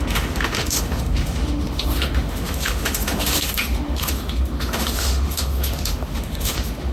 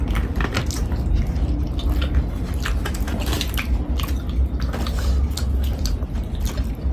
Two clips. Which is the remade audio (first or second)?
first